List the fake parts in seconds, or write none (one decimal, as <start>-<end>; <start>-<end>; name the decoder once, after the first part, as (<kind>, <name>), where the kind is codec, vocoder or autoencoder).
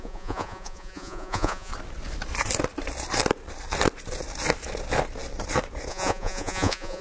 0.0-1.7 (vocoder, Vocos); 5.9-7.0